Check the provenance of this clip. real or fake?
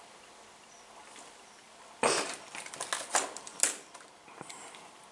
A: real